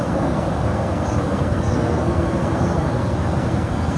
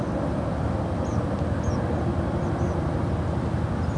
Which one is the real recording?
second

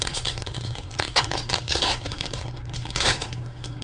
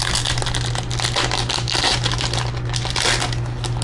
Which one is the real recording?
second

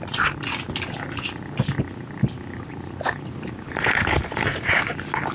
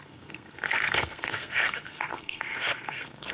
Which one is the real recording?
first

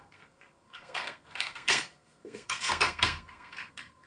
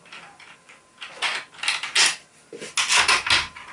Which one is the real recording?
second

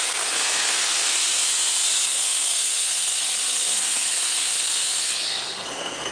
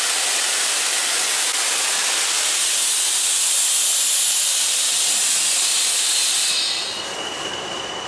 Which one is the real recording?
second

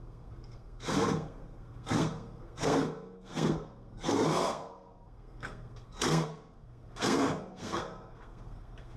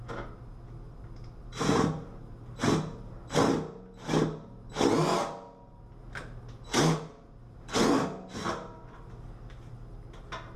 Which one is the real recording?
second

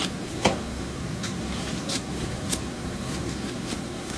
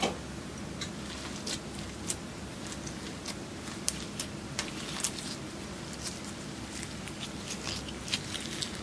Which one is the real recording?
second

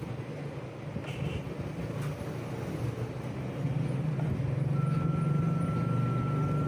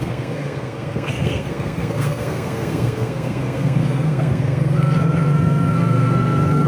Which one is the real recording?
first